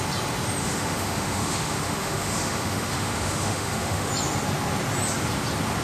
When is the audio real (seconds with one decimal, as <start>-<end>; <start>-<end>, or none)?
0.0-0.6; 4.1-5.8